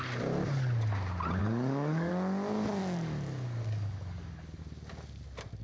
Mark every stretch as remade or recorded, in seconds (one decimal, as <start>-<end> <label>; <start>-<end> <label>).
0.0-1.4 recorded; 1.4-2.1 remade; 2.1-2.8 recorded; 2.8-4.6 remade; 4.6-5.6 recorded